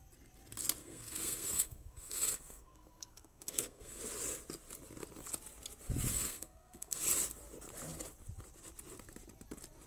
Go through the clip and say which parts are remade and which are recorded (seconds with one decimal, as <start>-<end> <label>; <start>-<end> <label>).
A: 0.0-0.8 recorded; 0.8-4.0 remade; 4.0-6.1 recorded; 6.1-7.0 remade; 7.0-9.9 recorded